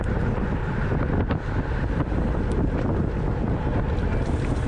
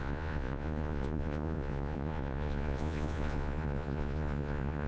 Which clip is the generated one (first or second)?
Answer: second